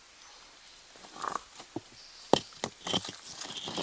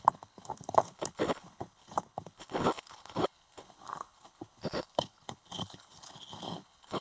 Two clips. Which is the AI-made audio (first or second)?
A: second